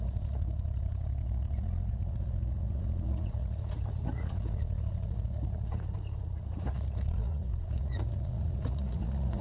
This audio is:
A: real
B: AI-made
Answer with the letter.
B